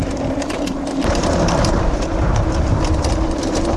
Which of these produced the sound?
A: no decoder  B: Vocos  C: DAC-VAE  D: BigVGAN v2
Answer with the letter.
D